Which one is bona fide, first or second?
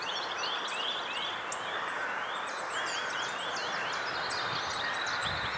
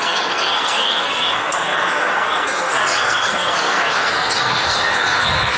first